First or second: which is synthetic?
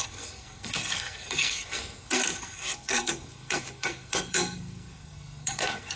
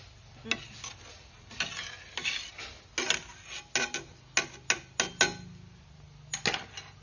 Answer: first